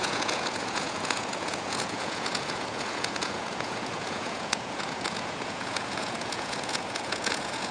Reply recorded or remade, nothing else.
remade